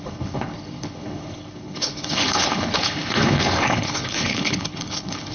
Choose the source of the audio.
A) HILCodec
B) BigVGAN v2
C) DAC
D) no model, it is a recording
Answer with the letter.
A